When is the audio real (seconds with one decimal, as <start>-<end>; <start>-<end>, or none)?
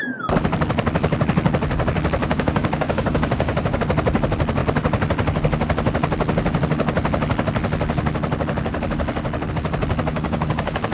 0.0-2.2; 3.8-10.1